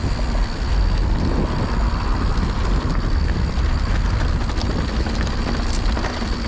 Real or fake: real